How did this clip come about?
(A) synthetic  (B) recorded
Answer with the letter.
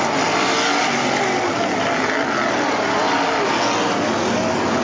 B